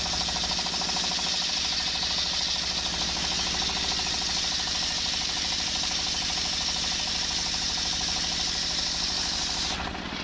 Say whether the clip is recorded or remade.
recorded